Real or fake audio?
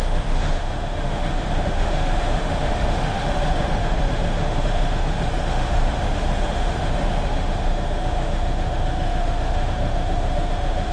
fake